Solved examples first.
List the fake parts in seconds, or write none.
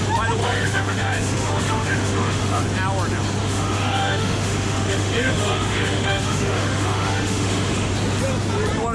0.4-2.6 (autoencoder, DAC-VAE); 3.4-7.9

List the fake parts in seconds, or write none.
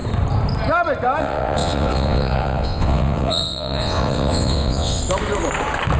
1.2-5.0 (vocoder, WaveNeXt)